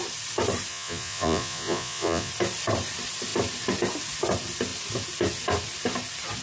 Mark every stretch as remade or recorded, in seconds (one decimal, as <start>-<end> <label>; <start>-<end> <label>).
0.0-0.7 recorded; 0.7-2.3 remade; 2.3-6.4 recorded